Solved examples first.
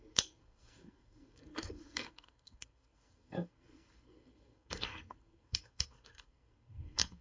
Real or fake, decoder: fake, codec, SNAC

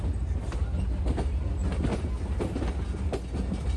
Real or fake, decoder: real